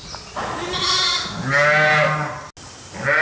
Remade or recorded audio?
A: recorded